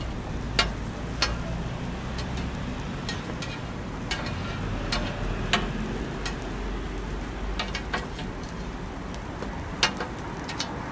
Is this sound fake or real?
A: real